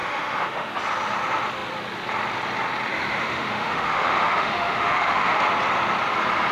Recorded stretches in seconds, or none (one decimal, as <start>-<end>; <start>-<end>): 0.7-2.9; 5.4-6.5